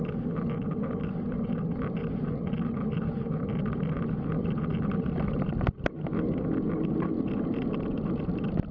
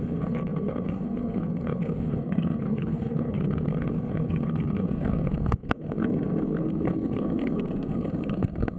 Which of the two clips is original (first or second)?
first